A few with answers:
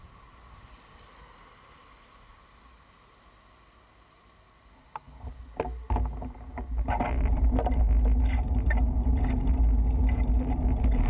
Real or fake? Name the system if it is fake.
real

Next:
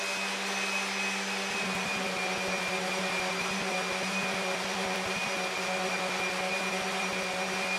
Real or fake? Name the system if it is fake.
real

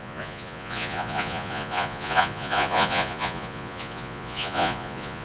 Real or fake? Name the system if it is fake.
fake, vocoder, Vocos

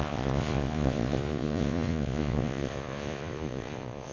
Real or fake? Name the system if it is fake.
fake, vocoder, Vocos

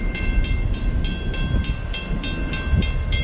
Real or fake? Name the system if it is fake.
real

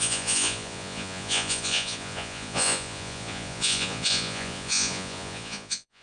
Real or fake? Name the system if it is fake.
fake, vocoder, Vocos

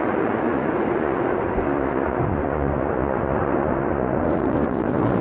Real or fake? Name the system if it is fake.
fake, vocoder, Vocos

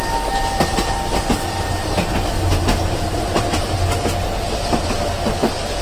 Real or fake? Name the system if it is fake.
real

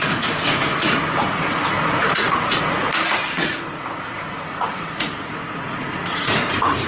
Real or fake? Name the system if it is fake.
fake, vocoder, Vocos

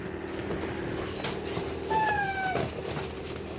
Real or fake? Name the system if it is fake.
real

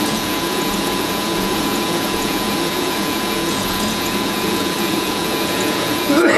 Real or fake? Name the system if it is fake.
fake, vocoder, Vocos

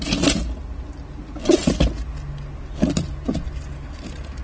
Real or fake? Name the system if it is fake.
real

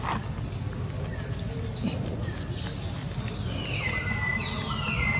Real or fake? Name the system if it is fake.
real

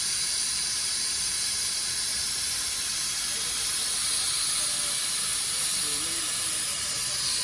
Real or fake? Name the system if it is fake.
real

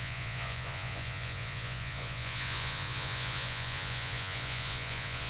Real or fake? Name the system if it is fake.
fake, vocoder, Vocos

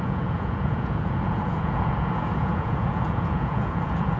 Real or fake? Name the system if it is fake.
fake, vocoder, Vocos